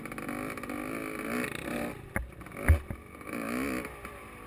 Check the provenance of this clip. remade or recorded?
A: recorded